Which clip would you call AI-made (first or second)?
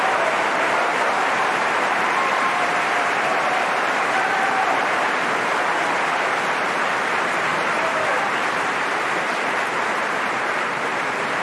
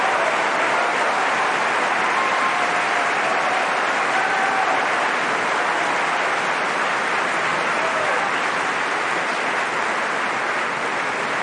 first